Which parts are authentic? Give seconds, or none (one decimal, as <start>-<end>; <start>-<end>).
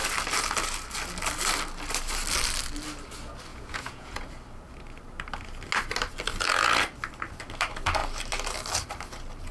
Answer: 0.0-3.5; 4.3-9.5